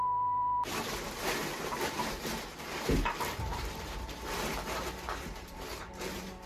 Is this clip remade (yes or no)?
yes